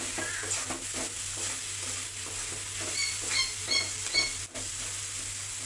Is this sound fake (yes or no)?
no